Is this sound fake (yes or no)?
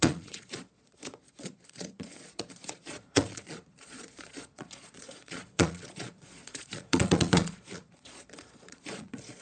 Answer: yes